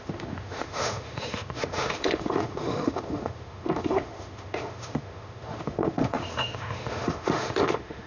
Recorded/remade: remade